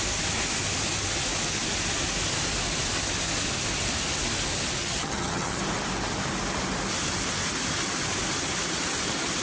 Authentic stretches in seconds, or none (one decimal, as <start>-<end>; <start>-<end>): 0.0-4.8; 5.6-9.4

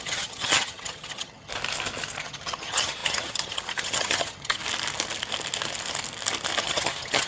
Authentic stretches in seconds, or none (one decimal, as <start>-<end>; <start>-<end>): 1.5-2.2; 4.6-6.6

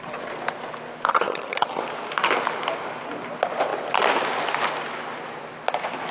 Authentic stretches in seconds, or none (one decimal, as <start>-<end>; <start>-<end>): 0.0-1.1; 1.8-6.1